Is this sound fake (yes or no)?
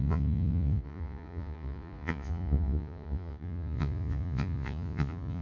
yes